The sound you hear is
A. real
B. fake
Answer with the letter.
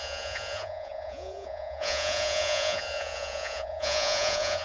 B